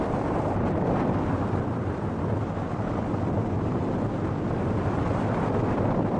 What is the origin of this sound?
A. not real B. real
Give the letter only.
B